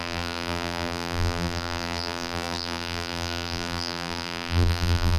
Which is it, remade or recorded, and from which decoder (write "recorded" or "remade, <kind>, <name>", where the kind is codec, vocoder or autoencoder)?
remade, vocoder, BigVGAN v2